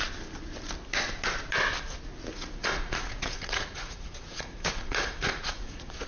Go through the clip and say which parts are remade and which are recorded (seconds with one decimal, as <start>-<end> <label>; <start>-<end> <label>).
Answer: 0.0-2.3 recorded; 2.3-6.1 remade